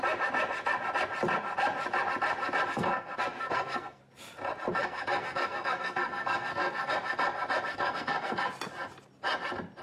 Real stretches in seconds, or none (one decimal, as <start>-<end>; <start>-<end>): 0.0-2.7; 4.0-4.8; 6.9-7.7; 8.5-9.8